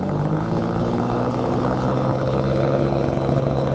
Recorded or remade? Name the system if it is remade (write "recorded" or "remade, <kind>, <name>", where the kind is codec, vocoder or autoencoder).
remade, codec, HILCodec